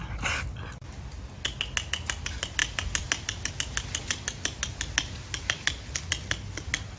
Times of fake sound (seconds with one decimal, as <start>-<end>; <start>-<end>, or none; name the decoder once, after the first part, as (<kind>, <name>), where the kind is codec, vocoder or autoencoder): none